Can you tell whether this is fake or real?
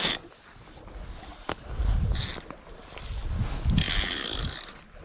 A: real